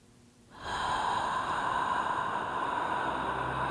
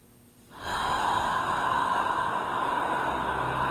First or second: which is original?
first